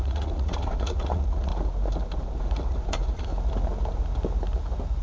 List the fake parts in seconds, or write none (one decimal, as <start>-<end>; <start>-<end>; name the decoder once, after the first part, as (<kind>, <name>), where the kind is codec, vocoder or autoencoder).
0.0-1.5 (vocoder, Vocos); 2.4-3.3

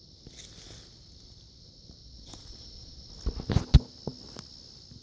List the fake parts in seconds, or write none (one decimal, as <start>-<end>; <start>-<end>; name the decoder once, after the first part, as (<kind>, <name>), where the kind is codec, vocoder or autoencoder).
2.0-3.1 (vocoder, Vocos)

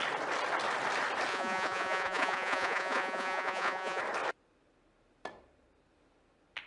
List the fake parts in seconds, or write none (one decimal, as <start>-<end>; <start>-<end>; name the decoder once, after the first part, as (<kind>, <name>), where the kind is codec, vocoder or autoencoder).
1.3-4.0 (vocoder, Vocos)